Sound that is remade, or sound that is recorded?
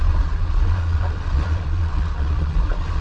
remade